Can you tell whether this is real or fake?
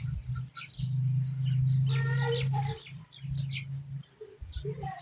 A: real